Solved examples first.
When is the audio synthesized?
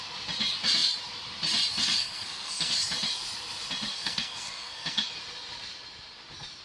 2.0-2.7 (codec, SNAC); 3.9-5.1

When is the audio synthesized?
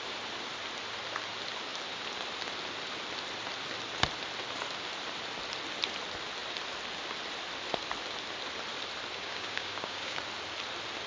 9.2-10.2 (codec, DAC)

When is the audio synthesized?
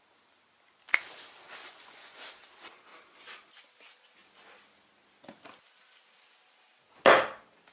1.6-2.3 (vocoder, Vocos)